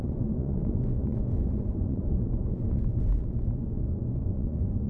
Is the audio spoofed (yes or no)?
yes